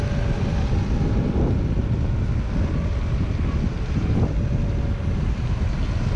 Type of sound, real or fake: real